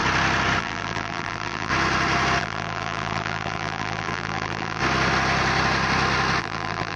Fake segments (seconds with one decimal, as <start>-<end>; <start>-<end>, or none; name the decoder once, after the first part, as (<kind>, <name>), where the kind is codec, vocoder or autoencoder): 0.6-1.7 (vocoder, BigVGAN v2); 2.4-4.8; 6.4-7.0